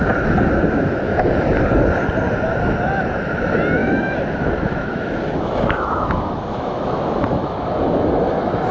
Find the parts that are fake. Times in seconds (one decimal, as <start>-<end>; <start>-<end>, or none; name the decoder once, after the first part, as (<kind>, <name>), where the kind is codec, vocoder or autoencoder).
3.8-8.7 (autoencoder, DAC-VAE)